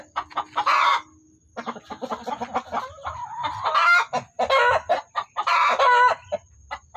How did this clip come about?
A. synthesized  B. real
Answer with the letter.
B